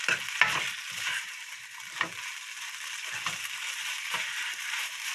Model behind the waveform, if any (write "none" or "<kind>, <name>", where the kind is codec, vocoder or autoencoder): vocoder, BigVGAN v2